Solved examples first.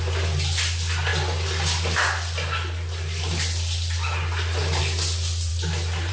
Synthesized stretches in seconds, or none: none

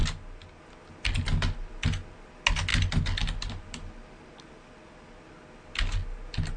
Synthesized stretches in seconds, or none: none

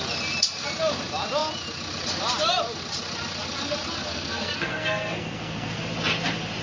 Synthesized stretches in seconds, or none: 4.1-5.8 (codec, SNAC)

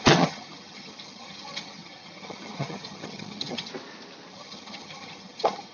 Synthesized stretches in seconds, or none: 0.0-3.7 (vocoder, HiFi-GAN); 4.3-5.7

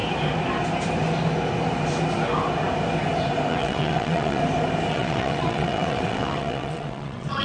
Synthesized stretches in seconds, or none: 3.5-4.4 (vocoder, WaveNeXt); 4.9-7.4